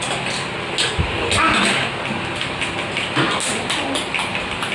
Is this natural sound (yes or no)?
yes